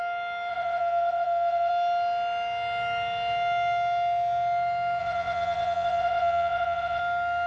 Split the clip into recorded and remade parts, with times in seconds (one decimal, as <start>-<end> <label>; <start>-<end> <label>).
0.0-0.5 recorded; 0.5-1.7 remade; 1.7-5.0 recorded; 5.0-7.0 remade; 7.0-7.5 recorded